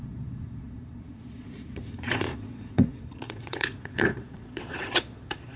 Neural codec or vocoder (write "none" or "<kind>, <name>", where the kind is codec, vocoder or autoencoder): vocoder, Vocos